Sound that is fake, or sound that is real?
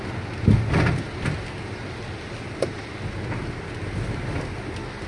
real